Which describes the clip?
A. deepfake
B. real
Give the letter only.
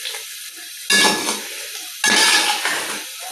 B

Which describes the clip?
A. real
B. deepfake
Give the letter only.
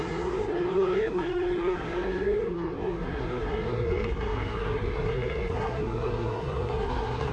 B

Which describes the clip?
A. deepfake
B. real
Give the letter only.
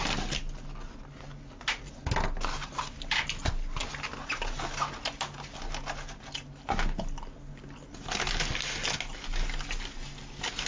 B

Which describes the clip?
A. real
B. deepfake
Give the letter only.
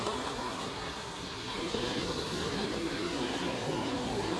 B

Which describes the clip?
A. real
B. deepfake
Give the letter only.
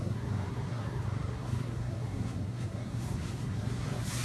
B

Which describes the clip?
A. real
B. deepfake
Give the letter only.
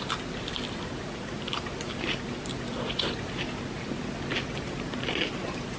A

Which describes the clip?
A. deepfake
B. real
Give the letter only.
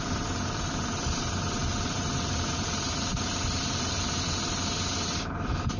A